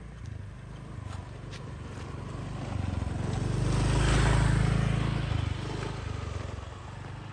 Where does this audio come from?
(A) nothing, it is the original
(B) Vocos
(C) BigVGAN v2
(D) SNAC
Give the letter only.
A